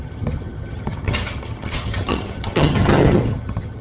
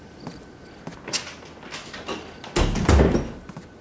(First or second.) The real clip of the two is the second